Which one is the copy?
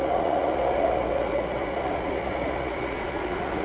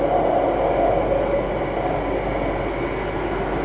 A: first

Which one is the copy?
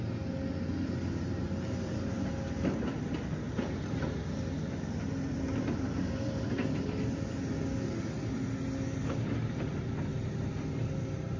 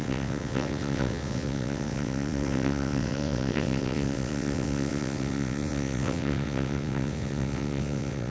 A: second